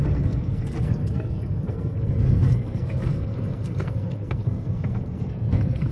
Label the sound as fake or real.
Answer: fake